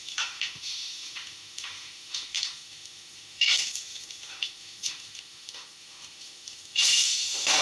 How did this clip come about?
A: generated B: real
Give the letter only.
A